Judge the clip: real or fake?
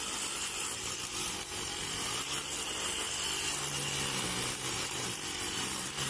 real